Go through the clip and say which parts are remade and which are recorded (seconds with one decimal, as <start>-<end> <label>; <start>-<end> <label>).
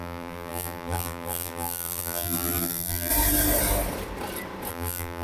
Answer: 0.0-3.1 remade; 3.1-4.7 recorded; 4.7-5.2 remade